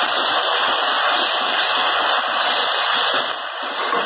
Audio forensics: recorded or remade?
recorded